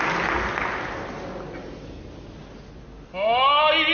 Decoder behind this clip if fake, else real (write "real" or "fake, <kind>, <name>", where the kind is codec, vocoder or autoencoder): real